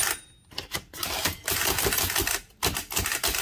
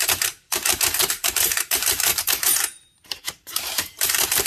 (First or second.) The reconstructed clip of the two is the second